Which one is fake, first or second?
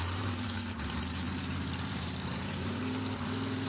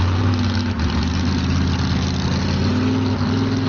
first